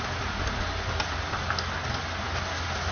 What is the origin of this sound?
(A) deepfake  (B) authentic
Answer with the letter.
B